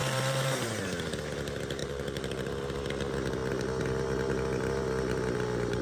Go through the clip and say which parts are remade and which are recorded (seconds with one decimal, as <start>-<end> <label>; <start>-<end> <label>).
0.0-0.8 remade; 0.8-1.8 recorded; 1.8-2.5 remade; 2.5-5.8 recorded